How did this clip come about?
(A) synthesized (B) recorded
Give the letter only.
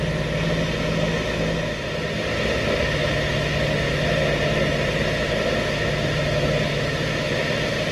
B